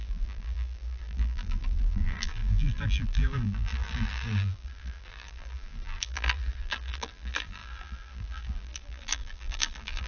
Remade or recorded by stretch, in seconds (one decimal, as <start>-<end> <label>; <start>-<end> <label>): 0.0-10.1 remade